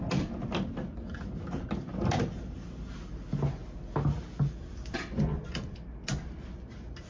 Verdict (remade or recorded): recorded